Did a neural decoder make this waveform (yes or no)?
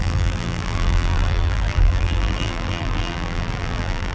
yes